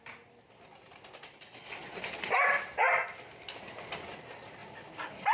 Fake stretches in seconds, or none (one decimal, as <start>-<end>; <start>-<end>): none